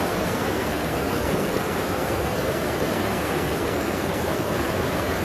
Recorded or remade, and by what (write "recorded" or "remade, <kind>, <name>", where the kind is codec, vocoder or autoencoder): remade, codec, SNAC